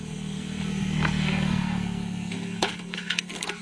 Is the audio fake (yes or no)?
yes